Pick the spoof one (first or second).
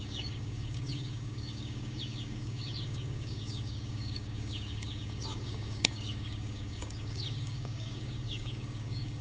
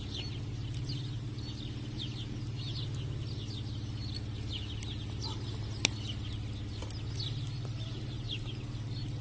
first